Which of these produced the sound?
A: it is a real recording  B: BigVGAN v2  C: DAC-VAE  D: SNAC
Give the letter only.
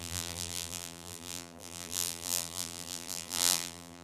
B